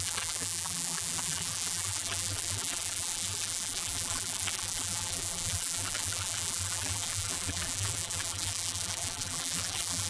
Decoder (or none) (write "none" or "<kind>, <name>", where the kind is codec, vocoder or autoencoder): vocoder, BigVGAN v2